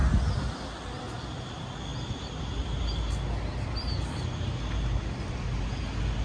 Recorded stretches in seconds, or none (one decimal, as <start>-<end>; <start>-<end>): 0.0-6.2